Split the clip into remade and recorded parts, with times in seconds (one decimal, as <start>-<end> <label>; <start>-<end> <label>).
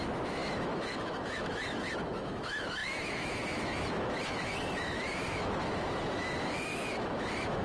0.0-7.6 remade